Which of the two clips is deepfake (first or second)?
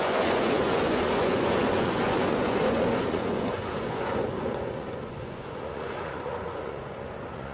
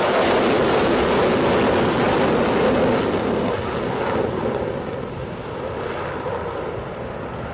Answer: first